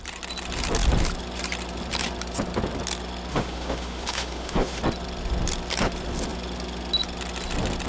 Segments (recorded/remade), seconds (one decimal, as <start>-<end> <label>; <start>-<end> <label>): 0.0-3.3 recorded; 3.3-4.8 remade; 4.8-7.9 recorded